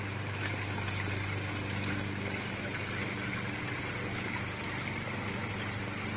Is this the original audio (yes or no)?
yes